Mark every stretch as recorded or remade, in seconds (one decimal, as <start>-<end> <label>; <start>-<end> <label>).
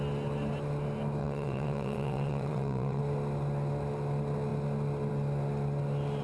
0.0-1.2 recorded; 1.2-3.0 remade; 3.0-6.2 recorded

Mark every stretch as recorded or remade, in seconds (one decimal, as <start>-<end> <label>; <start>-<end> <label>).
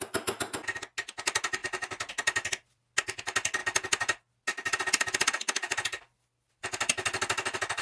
0.0-7.8 recorded